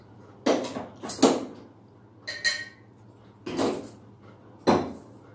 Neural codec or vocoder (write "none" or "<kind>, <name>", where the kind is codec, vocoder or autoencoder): none